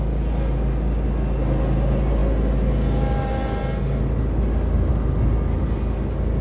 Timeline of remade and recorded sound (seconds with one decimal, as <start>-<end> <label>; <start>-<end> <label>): 0.0-6.4 recorded